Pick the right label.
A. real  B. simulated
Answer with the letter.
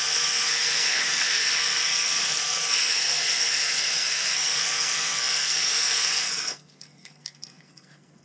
B